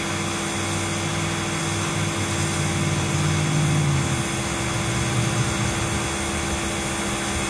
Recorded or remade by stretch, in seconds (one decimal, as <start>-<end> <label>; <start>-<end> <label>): 0.0-7.5 recorded